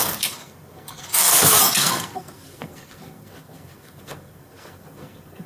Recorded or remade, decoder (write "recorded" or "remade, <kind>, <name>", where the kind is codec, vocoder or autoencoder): remade, codec, SNAC